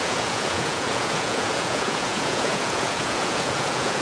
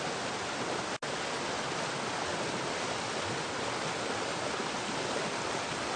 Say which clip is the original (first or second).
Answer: second